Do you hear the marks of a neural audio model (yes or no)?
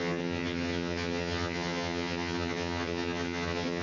yes